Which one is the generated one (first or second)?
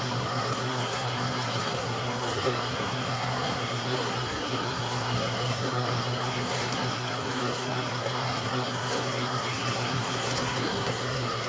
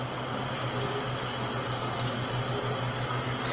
first